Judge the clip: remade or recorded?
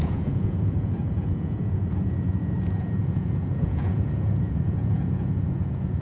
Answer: remade